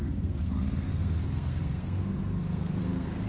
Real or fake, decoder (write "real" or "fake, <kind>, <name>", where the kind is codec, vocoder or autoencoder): fake, codec, SNAC